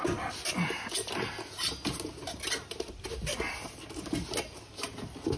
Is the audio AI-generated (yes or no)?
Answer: no